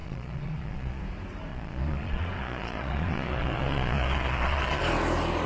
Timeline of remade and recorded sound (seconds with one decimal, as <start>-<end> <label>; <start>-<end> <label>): 0.0-1.0 remade; 1.0-1.5 recorded; 1.5-4.8 remade; 4.8-5.5 recorded